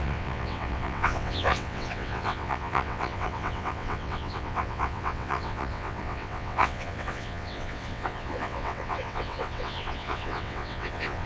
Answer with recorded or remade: remade